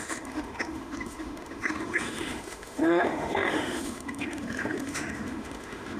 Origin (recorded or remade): remade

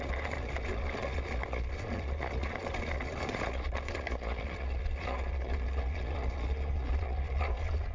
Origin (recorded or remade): remade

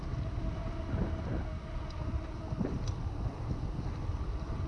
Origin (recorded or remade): recorded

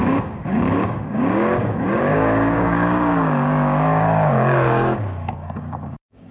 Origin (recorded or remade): remade